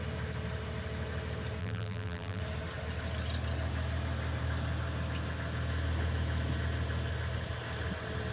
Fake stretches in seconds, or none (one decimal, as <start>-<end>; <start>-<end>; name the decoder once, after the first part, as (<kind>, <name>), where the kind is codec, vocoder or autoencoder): 1.6-2.4 (vocoder, BigVGAN v2)